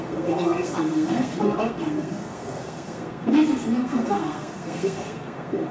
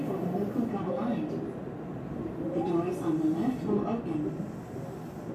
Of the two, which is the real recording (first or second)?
second